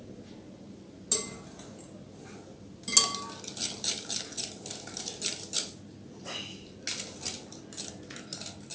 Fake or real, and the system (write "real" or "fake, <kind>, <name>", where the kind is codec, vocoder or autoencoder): real